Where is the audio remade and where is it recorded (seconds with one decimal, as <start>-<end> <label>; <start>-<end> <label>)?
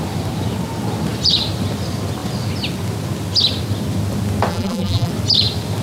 0.0-4.5 recorded; 4.5-5.1 remade; 5.1-5.8 recorded